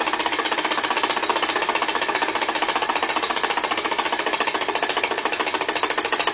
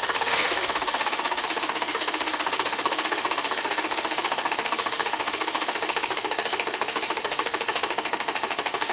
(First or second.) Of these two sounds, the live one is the first